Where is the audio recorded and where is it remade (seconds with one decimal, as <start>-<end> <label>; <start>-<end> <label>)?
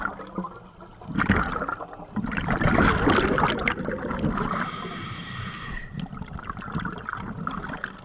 0.0-8.0 recorded